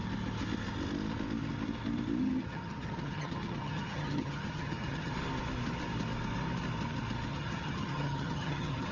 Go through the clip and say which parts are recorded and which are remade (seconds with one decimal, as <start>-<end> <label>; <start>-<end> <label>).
0.0-2.2 recorded; 2.2-5.1 remade; 5.1-7.3 recorded; 7.3-8.9 remade